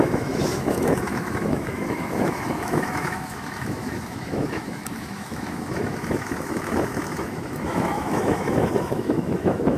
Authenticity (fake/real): fake